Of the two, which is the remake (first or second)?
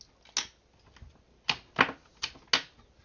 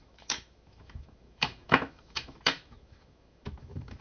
second